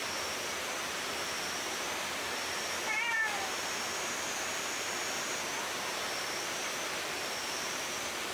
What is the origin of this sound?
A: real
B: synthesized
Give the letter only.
B